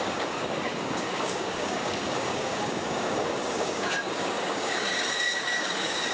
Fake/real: fake